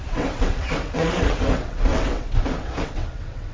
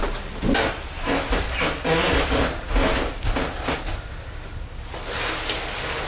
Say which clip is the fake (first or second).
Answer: first